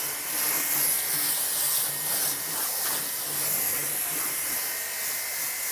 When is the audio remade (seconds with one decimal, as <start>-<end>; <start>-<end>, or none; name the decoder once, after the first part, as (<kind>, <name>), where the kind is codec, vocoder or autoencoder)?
none